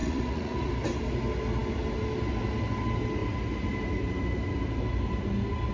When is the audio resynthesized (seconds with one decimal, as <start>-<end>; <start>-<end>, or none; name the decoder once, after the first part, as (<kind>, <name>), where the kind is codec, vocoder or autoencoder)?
0.0-0.7 (vocoder, Vocos)